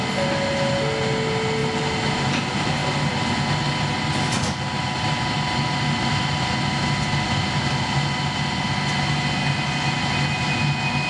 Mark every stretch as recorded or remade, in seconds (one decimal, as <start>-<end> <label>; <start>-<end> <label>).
0.0-11.1 recorded